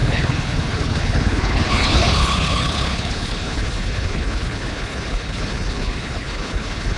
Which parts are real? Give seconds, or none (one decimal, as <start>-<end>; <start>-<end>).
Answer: none

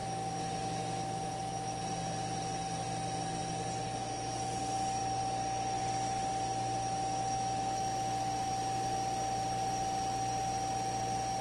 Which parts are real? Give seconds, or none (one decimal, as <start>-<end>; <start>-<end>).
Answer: 1.8-6.8; 8.5-11.4